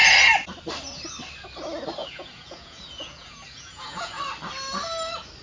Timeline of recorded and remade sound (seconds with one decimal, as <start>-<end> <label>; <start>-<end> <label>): 0.0-2.0 recorded; 2.0-4.2 remade; 4.2-5.4 recorded